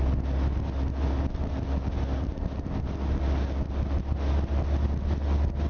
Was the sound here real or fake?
real